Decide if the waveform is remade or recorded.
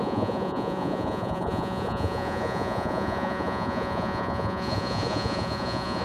remade